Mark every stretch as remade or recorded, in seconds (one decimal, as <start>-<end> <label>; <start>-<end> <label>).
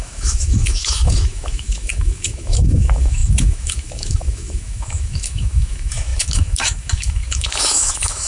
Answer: 0.0-8.3 remade